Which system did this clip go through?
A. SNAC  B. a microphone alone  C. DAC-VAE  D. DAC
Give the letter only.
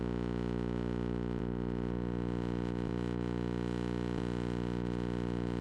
B